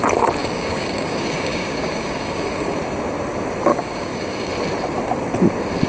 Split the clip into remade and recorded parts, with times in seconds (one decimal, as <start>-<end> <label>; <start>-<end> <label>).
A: 0.0-0.4 recorded; 0.4-2.7 remade; 2.7-3.7 recorded; 3.7-4.5 remade; 4.5-5.9 recorded